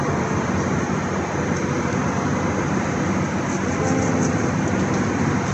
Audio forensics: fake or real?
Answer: real